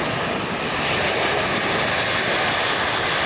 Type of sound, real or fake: real